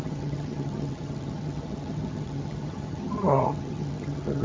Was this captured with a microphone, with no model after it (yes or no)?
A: no